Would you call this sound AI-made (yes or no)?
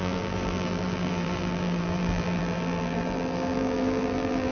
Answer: yes